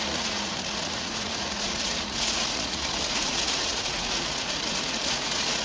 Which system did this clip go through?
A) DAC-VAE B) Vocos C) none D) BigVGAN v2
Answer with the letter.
B